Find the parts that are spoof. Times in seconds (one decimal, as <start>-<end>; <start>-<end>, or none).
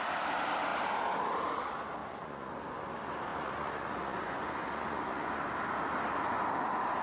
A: 2.0-2.5; 3.3-5.5